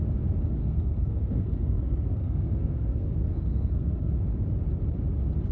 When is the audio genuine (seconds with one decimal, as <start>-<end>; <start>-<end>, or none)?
0.0-0.6; 3.1-3.5; 4.1-5.5